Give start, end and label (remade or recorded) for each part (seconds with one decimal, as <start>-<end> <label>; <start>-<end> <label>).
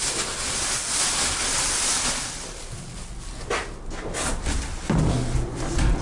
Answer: 0.0-6.0 recorded